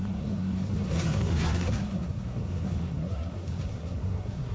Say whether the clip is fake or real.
fake